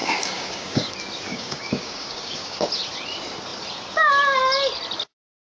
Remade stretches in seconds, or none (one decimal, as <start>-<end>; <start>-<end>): 0.0-0.9; 1.3-2.7